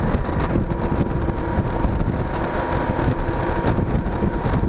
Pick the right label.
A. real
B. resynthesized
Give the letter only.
A